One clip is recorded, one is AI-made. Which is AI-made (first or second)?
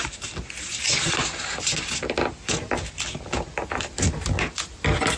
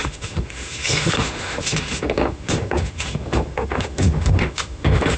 second